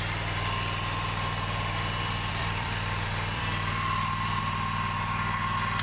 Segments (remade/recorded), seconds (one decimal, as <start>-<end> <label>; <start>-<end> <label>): 0.0-2.3 recorded; 2.3-4.4 remade; 4.4-5.8 recorded